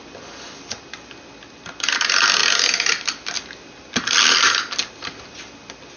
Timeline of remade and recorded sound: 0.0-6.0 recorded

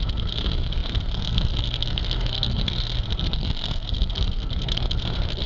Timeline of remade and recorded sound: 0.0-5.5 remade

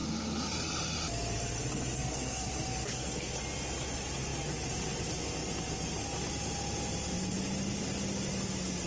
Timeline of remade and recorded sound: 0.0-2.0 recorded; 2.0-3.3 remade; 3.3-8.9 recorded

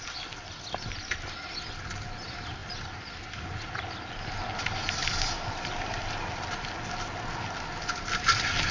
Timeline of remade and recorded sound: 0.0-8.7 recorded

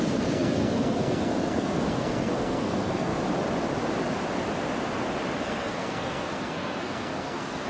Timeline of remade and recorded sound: 0.0-3.1 remade; 3.1-5.4 recorded; 5.4-7.7 remade

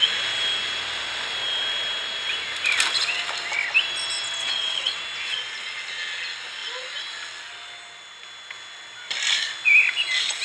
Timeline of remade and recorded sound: 0.0-4.4 recorded; 4.4-5.0 remade; 5.0-10.4 recorded

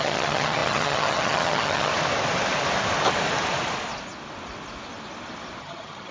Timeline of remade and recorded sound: 0.0-1.9 remade; 1.9-5.6 recorded; 5.6-6.1 remade